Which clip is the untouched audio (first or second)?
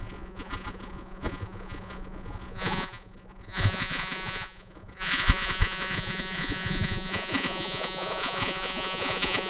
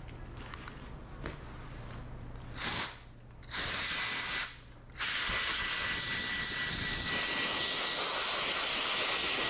second